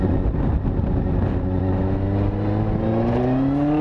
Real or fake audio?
real